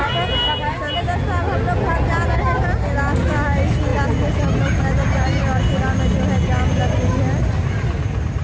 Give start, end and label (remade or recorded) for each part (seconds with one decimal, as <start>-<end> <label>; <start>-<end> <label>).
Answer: 0.0-8.4 recorded

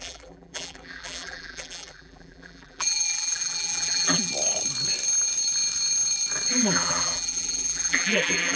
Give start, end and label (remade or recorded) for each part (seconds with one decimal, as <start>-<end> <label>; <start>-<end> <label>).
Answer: 0.0-4.3 remade; 4.3-6.5 recorded; 6.5-8.6 remade

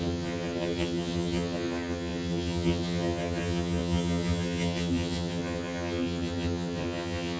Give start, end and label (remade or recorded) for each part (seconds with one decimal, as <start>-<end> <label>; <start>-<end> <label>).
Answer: 0.0-7.4 remade

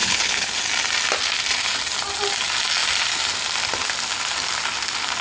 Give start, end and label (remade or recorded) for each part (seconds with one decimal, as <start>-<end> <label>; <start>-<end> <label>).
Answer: 0.0-0.6 remade; 0.6-5.2 recorded